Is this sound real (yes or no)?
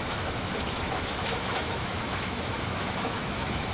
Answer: no